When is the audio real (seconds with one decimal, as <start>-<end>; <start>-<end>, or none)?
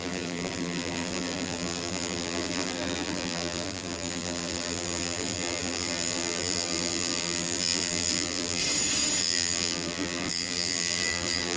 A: 8.6-9.2